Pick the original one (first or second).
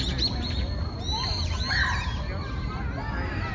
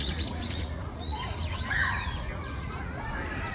first